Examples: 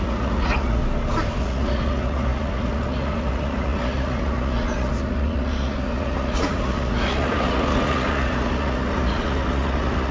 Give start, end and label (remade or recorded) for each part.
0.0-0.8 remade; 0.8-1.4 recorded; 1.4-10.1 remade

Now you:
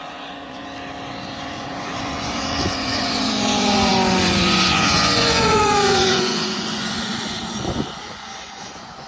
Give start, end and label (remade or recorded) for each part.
0.0-0.6 remade; 0.6-1.4 recorded; 1.4-9.1 remade

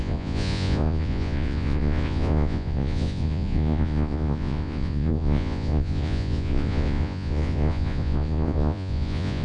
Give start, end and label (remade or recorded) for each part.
0.0-9.4 remade